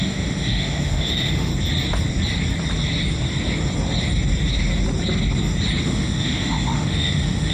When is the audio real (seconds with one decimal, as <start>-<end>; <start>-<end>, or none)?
1.5-5.8